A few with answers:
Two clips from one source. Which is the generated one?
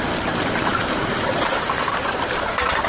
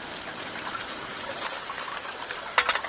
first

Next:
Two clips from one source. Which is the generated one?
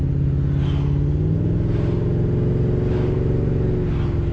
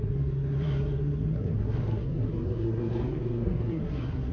second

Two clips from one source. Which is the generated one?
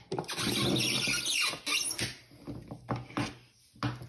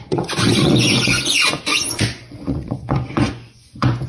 second